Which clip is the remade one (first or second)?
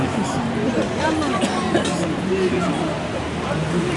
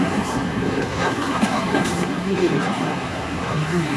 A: second